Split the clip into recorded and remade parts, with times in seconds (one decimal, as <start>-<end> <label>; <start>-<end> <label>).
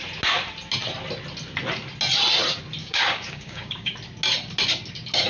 0.0-2.8 recorded; 2.8-3.9 remade; 3.9-5.3 recorded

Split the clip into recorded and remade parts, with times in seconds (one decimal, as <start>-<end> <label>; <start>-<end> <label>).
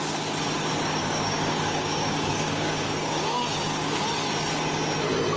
0.0-0.8 recorded; 0.8-4.0 remade; 4.0-5.4 recorded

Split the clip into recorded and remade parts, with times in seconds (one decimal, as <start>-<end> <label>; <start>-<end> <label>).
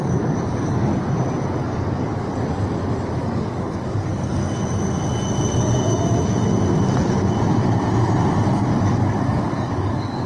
0.0-0.9 remade; 0.9-1.6 recorded; 1.6-2.3 remade; 2.3-3.2 recorded; 3.2-4.4 remade; 4.4-8.8 recorded; 8.8-10.3 remade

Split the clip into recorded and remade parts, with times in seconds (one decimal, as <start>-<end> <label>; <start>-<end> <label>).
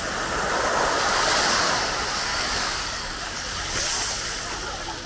0.0-2.3 recorded; 2.3-3.7 remade; 3.7-5.1 recorded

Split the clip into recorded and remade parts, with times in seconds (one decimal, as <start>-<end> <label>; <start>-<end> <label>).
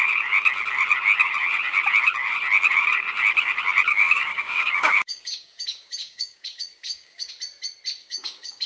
0.0-3.9 recorded; 3.9-7.3 remade; 7.3-8.0 recorded; 8.0-8.7 remade